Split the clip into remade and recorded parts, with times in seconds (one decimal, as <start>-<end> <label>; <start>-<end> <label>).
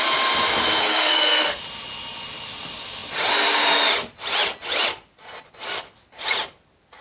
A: 0.0-0.8 recorded; 0.8-1.6 remade; 1.6-7.0 recorded